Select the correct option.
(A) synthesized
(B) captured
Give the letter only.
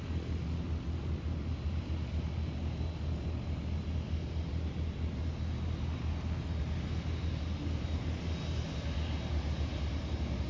B